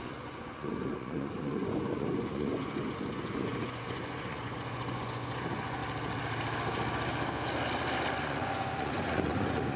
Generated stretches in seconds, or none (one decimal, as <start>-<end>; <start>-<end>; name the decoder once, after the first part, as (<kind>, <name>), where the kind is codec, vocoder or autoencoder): 0.0-5.8 (vocoder, Vocos); 8.2-9.8